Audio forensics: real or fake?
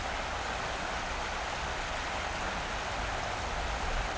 real